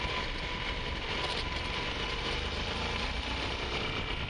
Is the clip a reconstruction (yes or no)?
yes